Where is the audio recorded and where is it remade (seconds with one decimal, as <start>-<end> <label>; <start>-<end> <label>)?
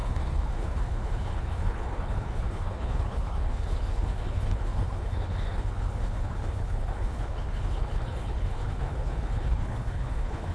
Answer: 0.0-10.5 remade